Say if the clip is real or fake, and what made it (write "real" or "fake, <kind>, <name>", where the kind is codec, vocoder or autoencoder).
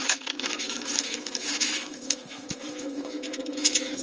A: fake, autoencoder, DAC-VAE